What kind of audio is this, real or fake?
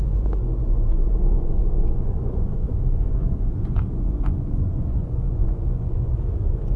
fake